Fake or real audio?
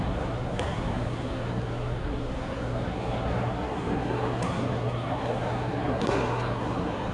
fake